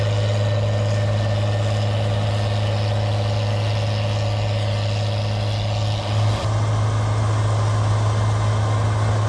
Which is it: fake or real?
real